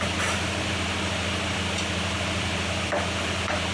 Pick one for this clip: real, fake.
real